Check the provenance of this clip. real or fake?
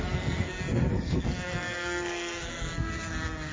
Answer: fake